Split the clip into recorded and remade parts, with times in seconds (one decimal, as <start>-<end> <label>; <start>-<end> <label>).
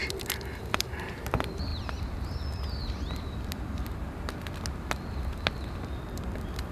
0.0-1.1 remade; 1.1-6.7 recorded